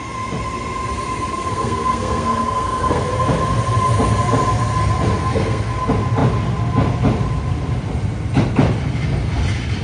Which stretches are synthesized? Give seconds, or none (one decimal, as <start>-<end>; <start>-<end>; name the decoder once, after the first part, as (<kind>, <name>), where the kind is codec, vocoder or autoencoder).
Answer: 1.3-3.1 (codec, SNAC); 5.2-5.7